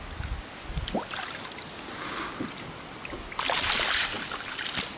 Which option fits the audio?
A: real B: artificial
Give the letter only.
A